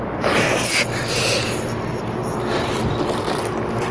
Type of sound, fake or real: real